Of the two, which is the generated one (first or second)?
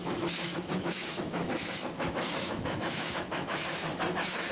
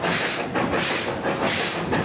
first